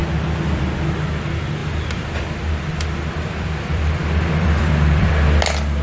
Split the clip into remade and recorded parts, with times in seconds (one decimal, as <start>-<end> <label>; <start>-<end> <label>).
0.0-1.6 recorded; 1.6-5.1 remade; 5.1-5.8 recorded